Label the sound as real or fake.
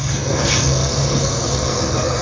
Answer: fake